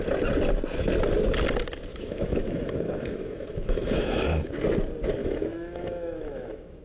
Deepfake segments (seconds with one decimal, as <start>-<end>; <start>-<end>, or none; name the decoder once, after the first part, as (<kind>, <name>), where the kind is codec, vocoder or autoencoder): 1.9-4.5 (autoencoder, DAC-VAE); 5.2-6.8